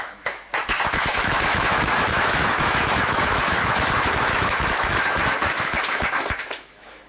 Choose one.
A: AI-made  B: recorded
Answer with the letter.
A